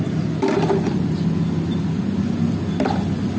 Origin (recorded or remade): recorded